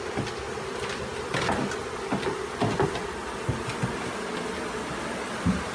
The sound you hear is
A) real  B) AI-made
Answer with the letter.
A